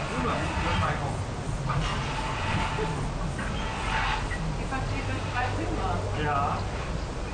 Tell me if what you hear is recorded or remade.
recorded